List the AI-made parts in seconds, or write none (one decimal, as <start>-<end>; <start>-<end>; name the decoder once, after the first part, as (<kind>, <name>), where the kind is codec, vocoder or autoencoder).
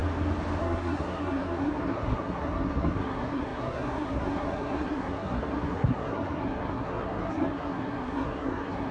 0.6-8.9 (codec, SNAC)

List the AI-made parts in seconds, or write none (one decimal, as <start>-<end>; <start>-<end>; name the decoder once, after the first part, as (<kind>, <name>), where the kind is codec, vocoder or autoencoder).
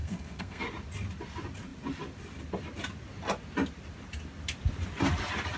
0.0-0.6 (codec, SNAC)